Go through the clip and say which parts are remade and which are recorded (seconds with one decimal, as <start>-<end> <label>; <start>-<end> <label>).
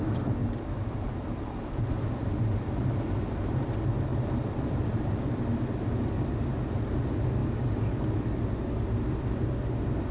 0.0-0.4 recorded; 0.4-1.9 remade; 1.9-4.1 recorded; 4.1-6.0 remade; 6.0-10.1 recorded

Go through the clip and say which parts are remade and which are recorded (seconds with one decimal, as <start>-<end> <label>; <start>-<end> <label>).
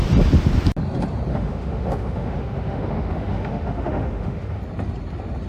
0.0-1.3 recorded; 1.3-4.6 remade; 4.6-5.5 recorded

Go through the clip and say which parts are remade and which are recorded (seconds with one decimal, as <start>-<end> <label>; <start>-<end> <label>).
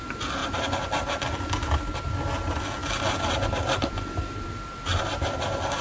0.0-5.8 recorded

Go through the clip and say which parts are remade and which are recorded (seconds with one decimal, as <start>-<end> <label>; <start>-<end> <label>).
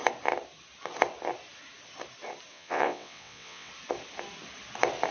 0.0-2.5 recorded; 2.5-3.7 remade; 3.7-5.1 recorded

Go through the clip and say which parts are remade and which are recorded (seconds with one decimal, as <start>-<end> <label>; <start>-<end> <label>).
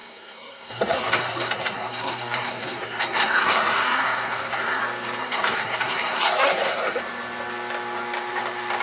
0.0-4.8 remade; 4.8-5.2 recorded; 5.2-7.0 remade; 7.0-8.8 recorded